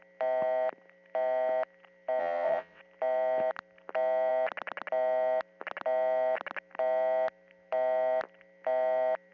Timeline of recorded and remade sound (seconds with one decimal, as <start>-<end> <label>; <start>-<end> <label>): 0.0-2.2 recorded; 2.2-2.8 remade; 2.8-9.3 recorded